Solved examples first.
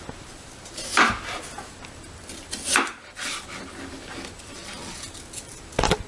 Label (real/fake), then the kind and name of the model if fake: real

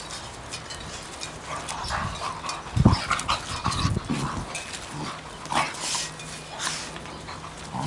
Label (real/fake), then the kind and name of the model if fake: real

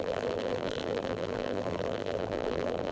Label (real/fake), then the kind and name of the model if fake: fake, vocoder, BigVGAN v2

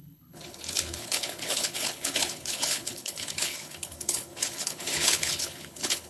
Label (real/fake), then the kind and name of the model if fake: fake, codec, HILCodec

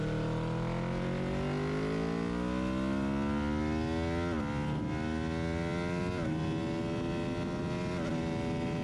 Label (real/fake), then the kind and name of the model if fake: real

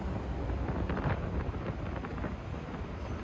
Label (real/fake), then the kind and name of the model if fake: real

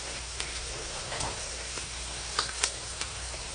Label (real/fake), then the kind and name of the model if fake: fake, codec, SNAC